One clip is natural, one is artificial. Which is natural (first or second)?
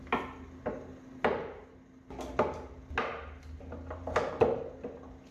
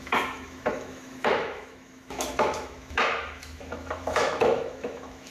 first